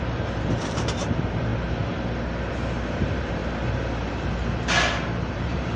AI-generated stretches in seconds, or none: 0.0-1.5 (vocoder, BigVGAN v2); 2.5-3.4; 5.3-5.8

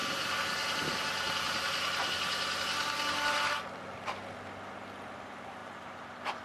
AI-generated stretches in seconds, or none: none

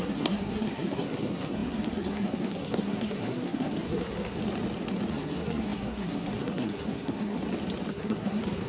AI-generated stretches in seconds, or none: 0.0-4.4 (codec, SNAC); 5.1-7.4; 7.9-8.7

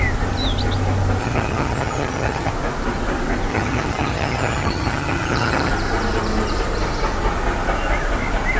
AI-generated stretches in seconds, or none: 1.2-2.5 (vocoder, HiFi-GAN); 3.5-5.7